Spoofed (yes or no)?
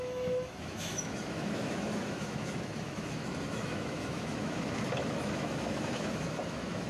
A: yes